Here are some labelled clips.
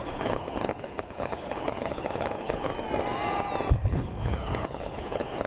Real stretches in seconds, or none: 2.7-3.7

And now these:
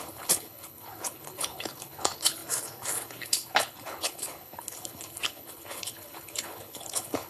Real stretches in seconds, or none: none

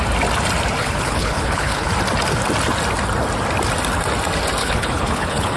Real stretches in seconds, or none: 0.0-0.8; 1.9-4.6